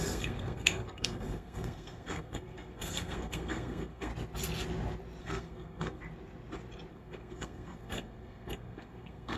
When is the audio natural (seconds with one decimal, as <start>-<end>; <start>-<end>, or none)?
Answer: 4.1-5.2; 6.0-6.9